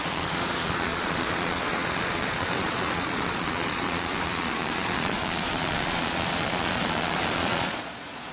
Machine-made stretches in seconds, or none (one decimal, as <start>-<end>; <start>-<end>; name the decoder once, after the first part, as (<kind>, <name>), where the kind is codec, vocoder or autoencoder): 0.0-8.3 (vocoder, Vocos)